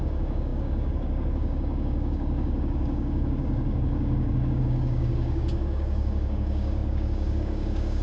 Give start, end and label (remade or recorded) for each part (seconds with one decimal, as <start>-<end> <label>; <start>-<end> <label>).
0.0-8.0 remade